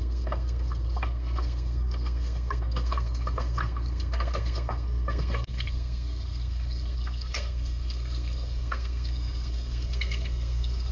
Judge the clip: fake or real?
fake